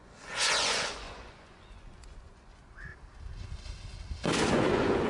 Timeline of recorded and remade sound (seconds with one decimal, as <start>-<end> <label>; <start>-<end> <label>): 0.0-2.9 remade; 2.9-4.5 recorded; 4.5-5.1 remade